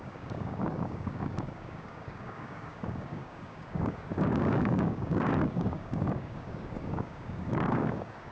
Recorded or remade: remade